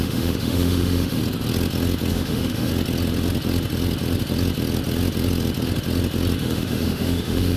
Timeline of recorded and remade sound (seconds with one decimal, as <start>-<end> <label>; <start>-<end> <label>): 0.0-1.2 remade; 1.2-2.1 recorded; 2.1-2.7 remade; 2.7-6.4 recorded; 6.4-7.6 remade